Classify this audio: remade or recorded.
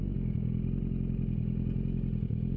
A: recorded